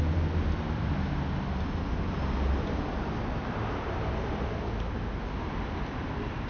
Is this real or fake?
real